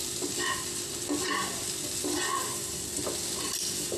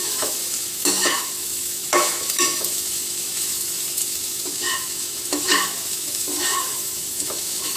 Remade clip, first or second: second